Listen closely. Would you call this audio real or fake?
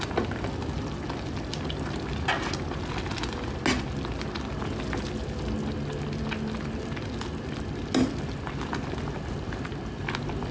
real